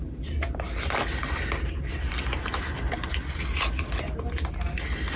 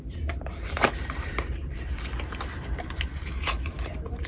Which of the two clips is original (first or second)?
first